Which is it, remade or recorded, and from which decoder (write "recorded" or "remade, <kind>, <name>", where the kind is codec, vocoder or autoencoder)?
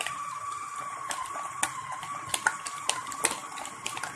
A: recorded